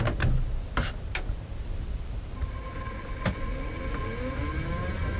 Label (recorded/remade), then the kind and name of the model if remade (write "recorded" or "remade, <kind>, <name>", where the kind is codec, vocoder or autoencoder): recorded